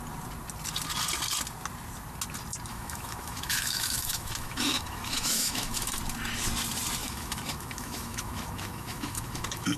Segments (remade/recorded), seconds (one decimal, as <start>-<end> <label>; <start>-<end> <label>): 0.0-2.7 recorded; 2.7-6.0 remade; 6.0-7.0 recorded; 7.0-9.8 remade